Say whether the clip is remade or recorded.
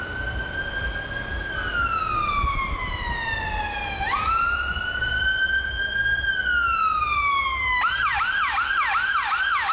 recorded